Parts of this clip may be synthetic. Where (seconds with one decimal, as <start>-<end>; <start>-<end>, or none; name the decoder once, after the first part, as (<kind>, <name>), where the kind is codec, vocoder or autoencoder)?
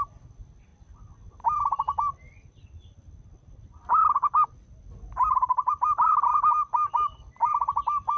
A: none